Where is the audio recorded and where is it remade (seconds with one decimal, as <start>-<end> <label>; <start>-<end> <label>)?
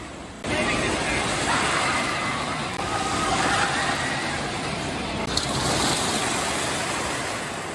0.0-2.7 recorded; 2.7-3.5 remade; 3.5-7.7 recorded